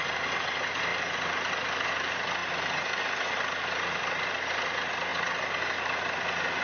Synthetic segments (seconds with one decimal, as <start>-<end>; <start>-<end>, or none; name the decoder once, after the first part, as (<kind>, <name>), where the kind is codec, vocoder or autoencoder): none